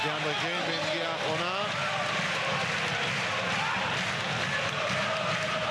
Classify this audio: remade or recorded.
recorded